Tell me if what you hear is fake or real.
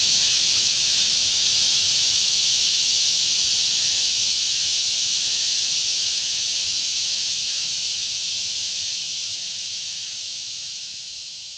fake